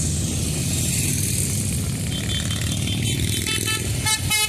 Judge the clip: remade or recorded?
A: recorded